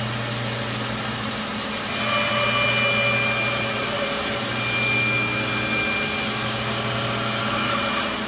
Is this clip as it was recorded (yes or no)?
yes